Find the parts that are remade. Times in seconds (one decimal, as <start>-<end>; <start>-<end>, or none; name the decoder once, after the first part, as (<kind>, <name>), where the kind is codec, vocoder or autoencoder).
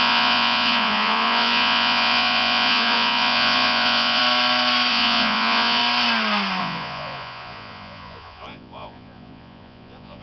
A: 0.0-4.2 (vocoder, Vocos); 4.9-5.8; 6.6-10.2